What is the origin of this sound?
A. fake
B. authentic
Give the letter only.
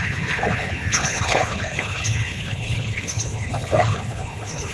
A